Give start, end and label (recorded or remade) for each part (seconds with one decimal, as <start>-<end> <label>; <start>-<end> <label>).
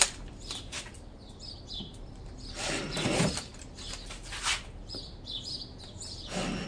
0.0-3.5 remade; 3.5-4.4 recorded; 4.4-6.7 remade